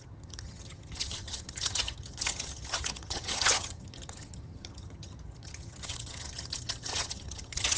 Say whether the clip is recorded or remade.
remade